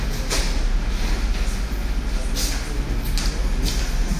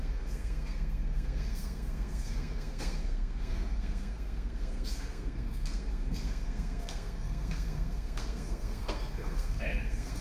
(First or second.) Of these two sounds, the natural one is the first